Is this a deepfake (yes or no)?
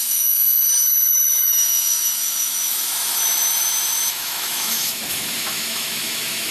yes